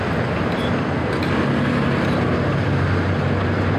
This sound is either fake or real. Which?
real